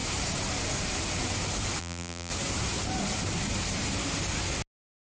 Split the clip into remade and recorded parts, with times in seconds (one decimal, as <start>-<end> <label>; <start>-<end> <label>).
0.0-1.8 recorded; 1.8-2.3 remade; 2.3-5.1 recorded